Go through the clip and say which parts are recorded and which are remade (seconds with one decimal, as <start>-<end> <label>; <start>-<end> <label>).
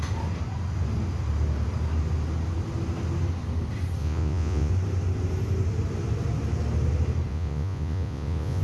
0.0-4.0 recorded; 4.0-4.7 remade; 4.7-7.3 recorded; 7.3-8.6 remade